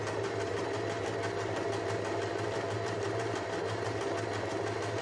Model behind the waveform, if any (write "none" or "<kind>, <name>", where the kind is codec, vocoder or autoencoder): none